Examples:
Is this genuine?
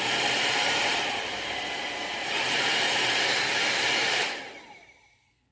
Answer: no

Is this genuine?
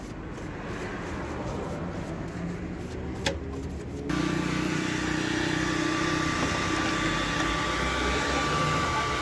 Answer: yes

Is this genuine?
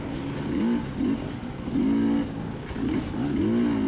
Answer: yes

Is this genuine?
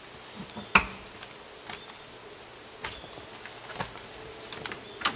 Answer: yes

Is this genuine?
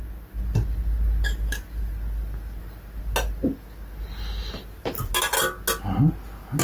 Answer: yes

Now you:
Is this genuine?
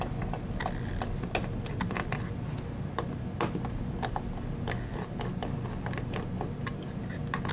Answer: yes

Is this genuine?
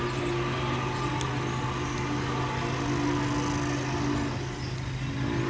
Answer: yes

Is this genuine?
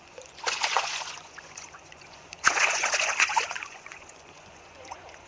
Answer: no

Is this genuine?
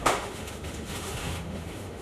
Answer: no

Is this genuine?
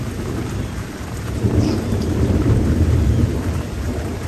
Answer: no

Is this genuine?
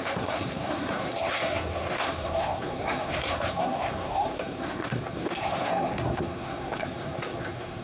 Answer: no